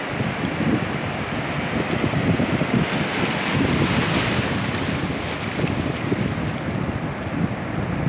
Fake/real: real